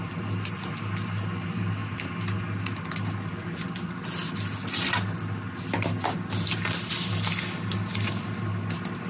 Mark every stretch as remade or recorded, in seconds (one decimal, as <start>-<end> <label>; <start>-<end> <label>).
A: 0.0-9.1 recorded